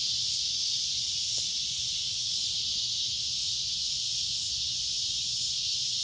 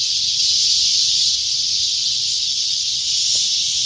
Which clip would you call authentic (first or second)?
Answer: second